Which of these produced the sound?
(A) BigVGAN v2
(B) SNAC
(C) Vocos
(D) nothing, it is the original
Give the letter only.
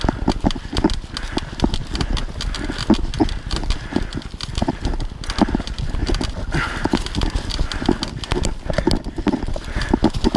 D